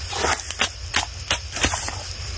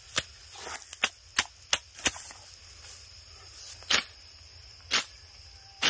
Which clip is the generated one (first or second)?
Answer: first